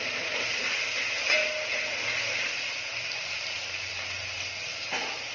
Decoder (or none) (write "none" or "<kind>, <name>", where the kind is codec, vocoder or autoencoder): none